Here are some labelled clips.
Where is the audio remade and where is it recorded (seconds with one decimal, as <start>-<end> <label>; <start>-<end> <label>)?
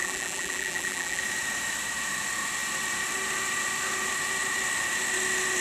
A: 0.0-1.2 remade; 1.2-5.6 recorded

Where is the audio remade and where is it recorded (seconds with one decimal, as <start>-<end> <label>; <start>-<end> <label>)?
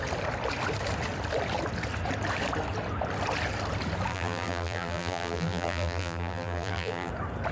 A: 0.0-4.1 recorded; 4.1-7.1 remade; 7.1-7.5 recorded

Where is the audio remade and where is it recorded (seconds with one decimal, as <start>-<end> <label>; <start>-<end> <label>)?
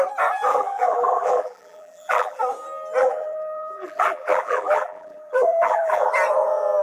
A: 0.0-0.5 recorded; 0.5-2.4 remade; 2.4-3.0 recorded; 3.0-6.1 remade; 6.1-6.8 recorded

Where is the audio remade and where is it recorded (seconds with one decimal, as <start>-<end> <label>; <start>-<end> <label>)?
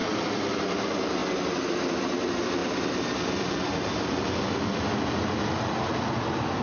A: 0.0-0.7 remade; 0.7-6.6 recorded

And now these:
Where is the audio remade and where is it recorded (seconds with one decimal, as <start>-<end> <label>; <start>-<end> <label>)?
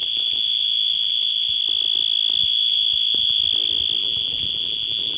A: 0.0-1.6 remade; 1.6-2.4 recorded; 2.4-3.4 remade; 3.4-4.0 recorded; 4.0-5.2 remade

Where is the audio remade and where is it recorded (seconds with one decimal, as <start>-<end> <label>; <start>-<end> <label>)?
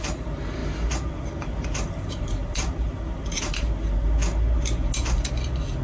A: 0.0-5.8 recorded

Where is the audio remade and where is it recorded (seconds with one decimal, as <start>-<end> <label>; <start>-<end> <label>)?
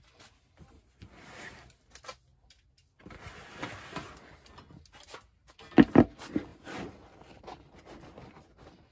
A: 0.0-6.5 recorded; 6.5-7.4 remade; 7.4-8.9 recorded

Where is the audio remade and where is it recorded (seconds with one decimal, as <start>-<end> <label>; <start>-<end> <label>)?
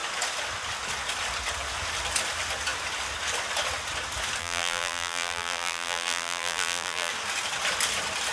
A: 0.0-4.4 recorded; 4.4-7.1 remade; 7.1-8.3 recorded